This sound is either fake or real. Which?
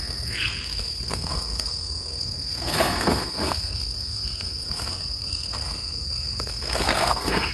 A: fake